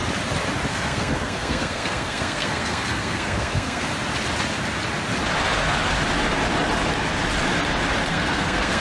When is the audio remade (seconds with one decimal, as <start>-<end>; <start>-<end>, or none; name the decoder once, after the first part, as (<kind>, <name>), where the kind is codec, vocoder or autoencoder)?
0.7-3.9 (codec, SNAC); 8.1-8.8